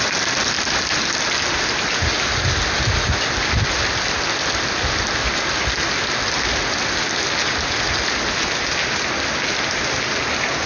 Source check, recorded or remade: recorded